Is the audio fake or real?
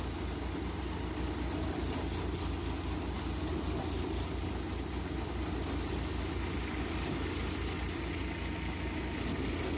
real